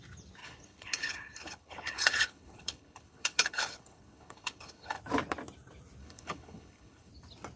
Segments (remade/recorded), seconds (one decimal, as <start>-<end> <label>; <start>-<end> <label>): 0.0-0.4 recorded; 0.4-5.0 remade; 5.0-6.0 recorded; 6.0-7.1 remade; 7.1-7.6 recorded